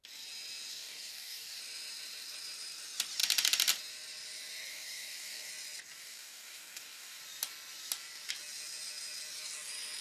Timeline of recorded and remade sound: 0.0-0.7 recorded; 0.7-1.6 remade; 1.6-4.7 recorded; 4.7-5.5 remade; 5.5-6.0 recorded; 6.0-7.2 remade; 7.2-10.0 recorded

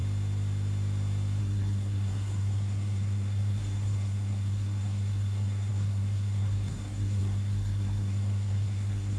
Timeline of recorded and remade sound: 0.0-1.4 recorded; 1.4-9.2 remade

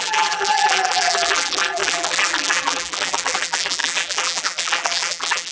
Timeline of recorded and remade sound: 0.0-5.5 remade

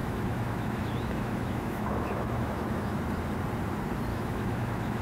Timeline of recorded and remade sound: 0.0-3.0 remade; 3.0-4.1 recorded; 4.1-5.0 remade

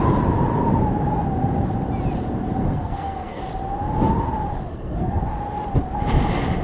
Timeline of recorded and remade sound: 0.0-2.6 recorded; 2.6-3.4 remade; 3.4-4.7 recorded; 4.7-5.2 remade; 5.2-6.6 recorded